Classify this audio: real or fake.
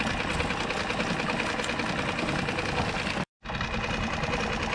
real